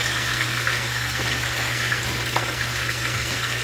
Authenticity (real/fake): fake